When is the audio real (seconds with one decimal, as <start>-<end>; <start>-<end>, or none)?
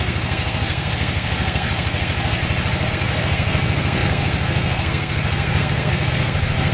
2.4-2.9